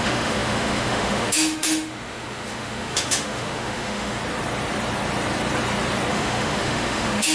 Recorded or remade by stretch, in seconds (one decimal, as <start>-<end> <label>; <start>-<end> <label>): 0.0-4.2 remade; 4.2-6.1 recorded; 6.1-7.3 remade